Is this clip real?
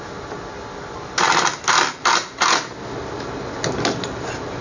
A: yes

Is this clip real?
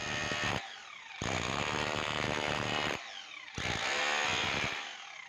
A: yes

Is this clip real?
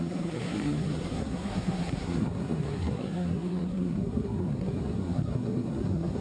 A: no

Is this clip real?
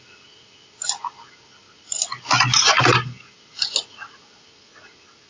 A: yes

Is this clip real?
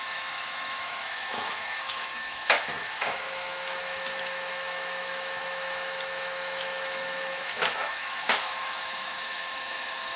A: no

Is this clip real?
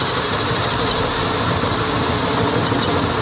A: yes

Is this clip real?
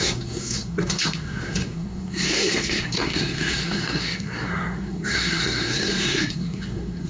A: no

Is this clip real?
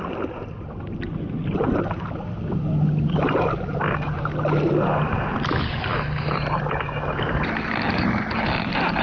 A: yes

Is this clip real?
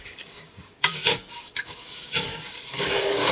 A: no